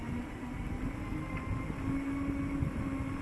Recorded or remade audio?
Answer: recorded